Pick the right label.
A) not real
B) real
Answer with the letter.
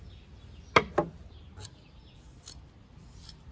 B